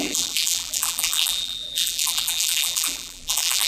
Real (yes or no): no